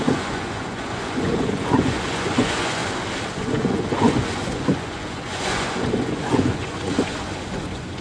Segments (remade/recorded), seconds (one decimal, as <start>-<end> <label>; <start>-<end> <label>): 0.0-2.8 remade; 2.8-3.3 recorded; 3.3-8.0 remade